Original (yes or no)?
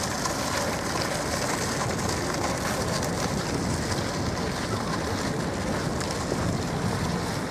yes